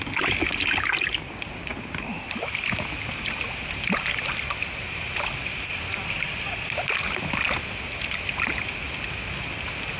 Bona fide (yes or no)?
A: yes